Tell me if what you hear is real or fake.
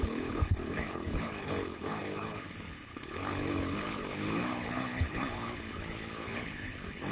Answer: fake